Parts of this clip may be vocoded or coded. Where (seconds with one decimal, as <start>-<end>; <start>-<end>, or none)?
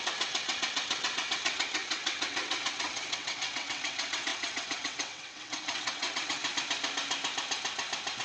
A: 0.0-6.4